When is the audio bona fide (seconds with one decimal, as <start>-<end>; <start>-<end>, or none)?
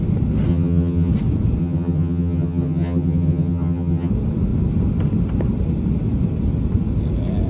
0.0-0.5; 1.1-1.6; 4.1-7.5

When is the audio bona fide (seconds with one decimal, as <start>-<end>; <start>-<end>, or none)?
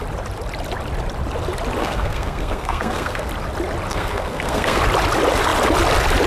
0.0-1.8; 3.3-3.9; 4.8-6.3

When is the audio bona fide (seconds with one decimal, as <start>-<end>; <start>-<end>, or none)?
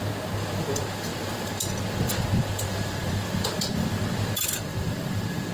0.0-4.7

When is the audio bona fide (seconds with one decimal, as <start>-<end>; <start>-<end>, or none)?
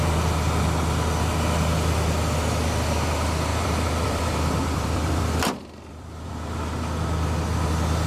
0.0-3.5; 6.3-8.1